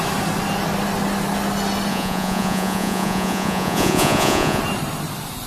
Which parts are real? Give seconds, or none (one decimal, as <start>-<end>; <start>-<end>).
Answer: 0.0-1.9; 4.6-5.5